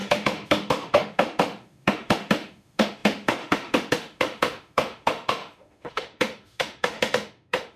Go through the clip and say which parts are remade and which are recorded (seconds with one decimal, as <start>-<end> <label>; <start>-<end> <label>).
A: 0.0-7.8 remade